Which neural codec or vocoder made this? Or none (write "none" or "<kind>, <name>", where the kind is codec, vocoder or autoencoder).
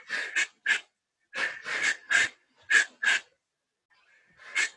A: none